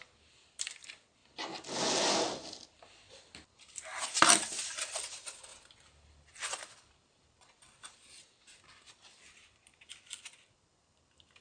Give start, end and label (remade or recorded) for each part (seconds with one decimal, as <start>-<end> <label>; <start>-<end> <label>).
0.0-1.2 remade; 1.2-3.7 recorded; 3.7-5.5 remade; 5.5-6.6 recorded; 6.6-11.4 remade